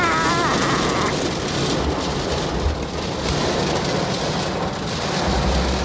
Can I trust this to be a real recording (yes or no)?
yes